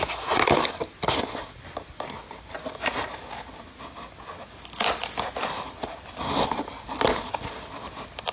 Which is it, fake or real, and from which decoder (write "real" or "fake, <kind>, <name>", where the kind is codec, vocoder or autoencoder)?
real